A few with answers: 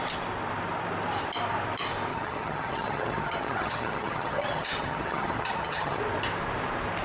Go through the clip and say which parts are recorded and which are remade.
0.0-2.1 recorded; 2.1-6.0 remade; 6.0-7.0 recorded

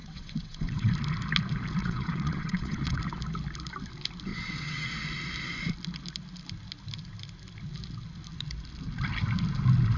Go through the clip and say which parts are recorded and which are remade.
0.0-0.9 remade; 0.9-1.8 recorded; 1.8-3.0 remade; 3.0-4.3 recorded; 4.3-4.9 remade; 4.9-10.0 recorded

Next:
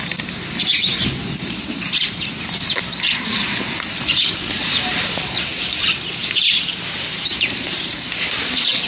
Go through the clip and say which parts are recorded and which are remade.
0.0-8.9 remade

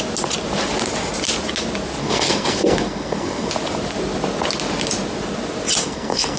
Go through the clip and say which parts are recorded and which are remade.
0.0-2.0 recorded; 2.0-3.5 remade; 3.5-5.8 recorded; 5.8-6.4 remade

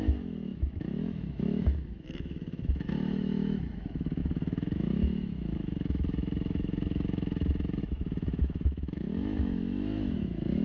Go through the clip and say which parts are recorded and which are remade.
0.0-10.6 remade